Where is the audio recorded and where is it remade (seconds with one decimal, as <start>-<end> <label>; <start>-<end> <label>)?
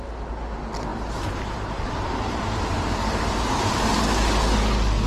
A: 0.0-0.9 recorded; 0.9-4.0 remade; 4.0-5.1 recorded